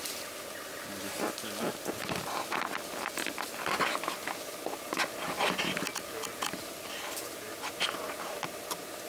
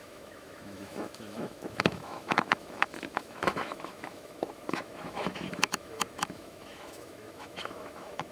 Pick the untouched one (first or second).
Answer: first